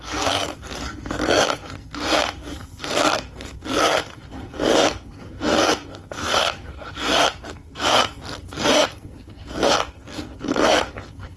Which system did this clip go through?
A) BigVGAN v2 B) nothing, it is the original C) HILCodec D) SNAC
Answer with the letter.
D